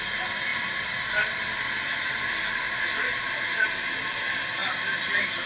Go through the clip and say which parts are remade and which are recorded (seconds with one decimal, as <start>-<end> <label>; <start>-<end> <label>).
0.0-0.5 recorded; 0.5-2.8 remade; 2.8-5.5 recorded